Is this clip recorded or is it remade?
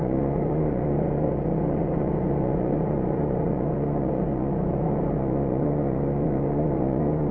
remade